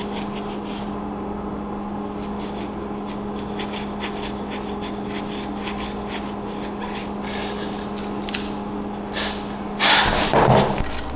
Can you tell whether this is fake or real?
real